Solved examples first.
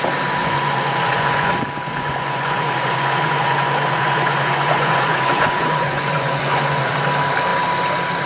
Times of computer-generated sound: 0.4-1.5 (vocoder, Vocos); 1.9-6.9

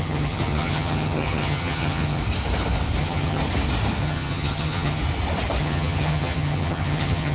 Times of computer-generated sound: 0.0-2.2 (vocoder, HiFi-GAN); 3.0-3.4; 4.0-5.0; 5.6-7.3

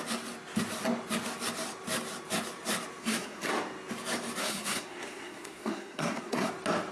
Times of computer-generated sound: 3.0-3.5 (codec, SNAC); 4.4-6.5

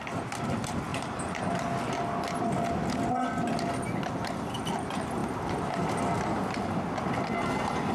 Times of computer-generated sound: 0.9-1.5 (vocoder, BigVGAN v2)

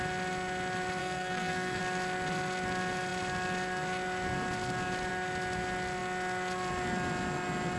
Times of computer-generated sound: 1.0-1.8 (codec, SNAC)

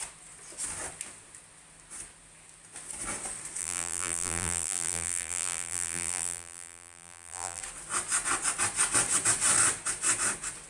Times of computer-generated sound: 3.6-7.6 (vocoder, BigVGAN v2)